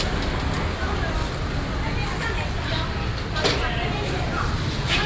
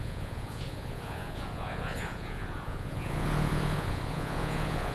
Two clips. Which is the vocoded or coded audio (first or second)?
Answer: second